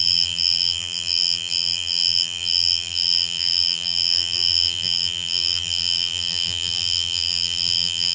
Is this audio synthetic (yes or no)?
yes